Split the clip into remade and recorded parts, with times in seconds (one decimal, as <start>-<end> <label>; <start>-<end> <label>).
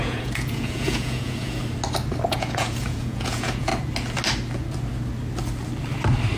0.0-1.6 remade; 1.6-2.3 recorded; 2.3-3.7 remade; 3.7-6.4 recorded